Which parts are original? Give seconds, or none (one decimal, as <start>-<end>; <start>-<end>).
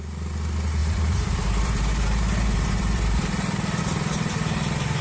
0.0-0.8; 3.8-5.0